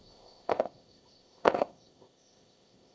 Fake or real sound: fake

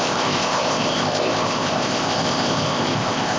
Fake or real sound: fake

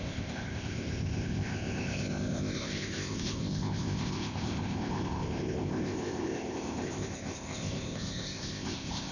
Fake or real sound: fake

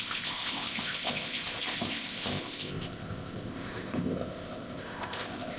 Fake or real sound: fake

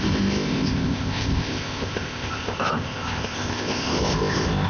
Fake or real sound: fake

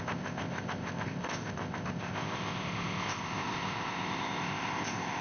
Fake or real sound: fake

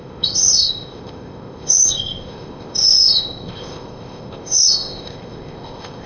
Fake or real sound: fake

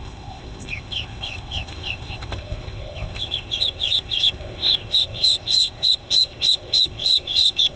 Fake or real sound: fake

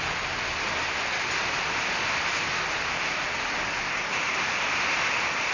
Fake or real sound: real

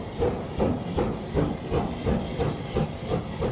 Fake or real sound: real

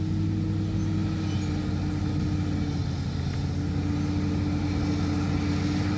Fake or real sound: real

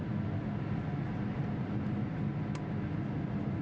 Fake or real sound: real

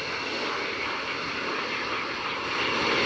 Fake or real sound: real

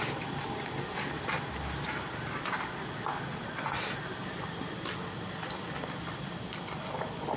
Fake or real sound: real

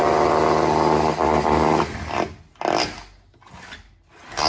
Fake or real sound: real